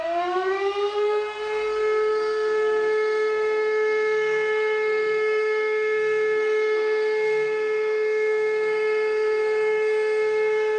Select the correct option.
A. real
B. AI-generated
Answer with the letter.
B